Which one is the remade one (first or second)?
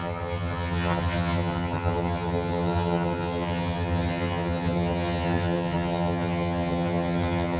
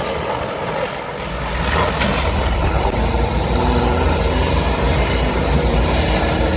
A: first